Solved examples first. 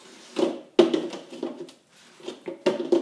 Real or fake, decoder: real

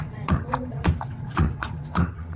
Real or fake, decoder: fake, vocoder, WaveNeXt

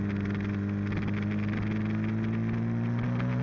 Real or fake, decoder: real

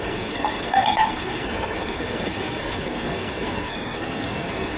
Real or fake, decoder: fake, codec, SNAC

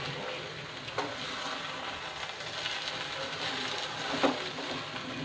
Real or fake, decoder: real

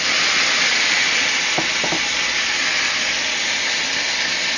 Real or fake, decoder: real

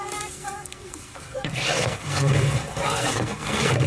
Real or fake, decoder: fake, codec, SNAC